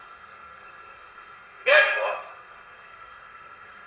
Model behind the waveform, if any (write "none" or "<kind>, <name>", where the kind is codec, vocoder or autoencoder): codec, SNAC